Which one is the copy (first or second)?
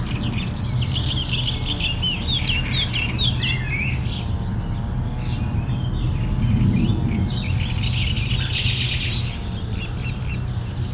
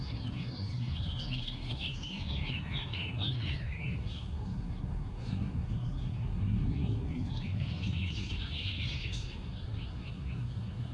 second